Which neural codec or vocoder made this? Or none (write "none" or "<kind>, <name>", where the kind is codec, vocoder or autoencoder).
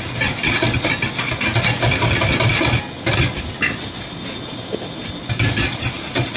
none